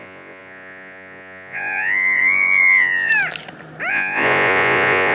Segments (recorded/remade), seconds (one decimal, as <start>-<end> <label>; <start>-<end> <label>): 0.0-3.1 remade; 3.1-3.9 recorded; 3.9-5.1 remade